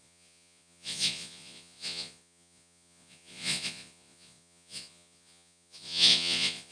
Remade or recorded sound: remade